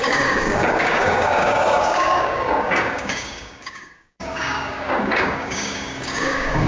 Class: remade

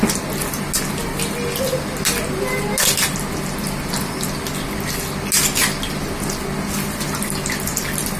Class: recorded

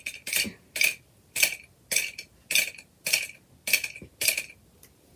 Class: recorded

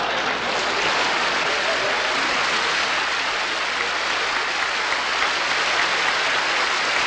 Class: recorded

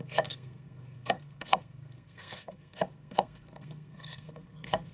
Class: remade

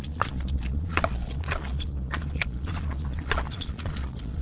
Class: remade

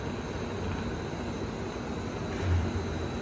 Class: recorded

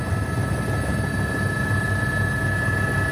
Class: recorded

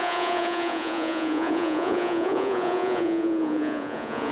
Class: remade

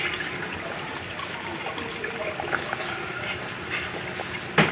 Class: recorded